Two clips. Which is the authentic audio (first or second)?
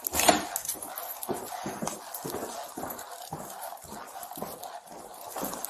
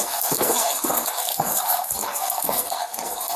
first